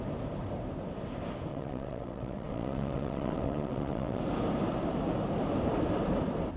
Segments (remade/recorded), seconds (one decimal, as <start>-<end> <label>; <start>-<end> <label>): 0.0-1.5 recorded; 1.5-4.2 remade; 4.2-6.6 recorded